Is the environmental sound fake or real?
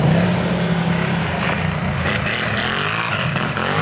real